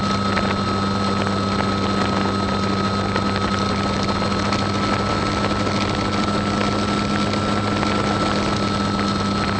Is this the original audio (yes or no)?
yes